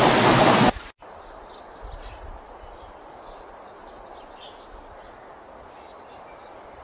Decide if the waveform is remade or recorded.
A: recorded